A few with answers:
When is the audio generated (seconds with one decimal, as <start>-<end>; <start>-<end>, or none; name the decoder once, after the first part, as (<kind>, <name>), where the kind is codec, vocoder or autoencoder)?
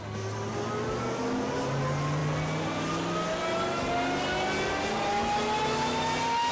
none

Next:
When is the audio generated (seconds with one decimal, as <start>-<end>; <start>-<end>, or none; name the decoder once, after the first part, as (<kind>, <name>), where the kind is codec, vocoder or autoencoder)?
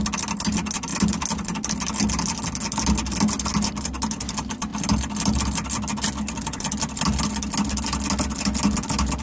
none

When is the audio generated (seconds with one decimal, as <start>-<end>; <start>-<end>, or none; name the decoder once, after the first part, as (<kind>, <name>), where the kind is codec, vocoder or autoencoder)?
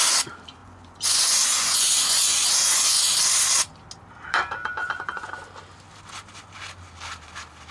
0.6-3.0 (vocoder, Vocos); 4.8-5.3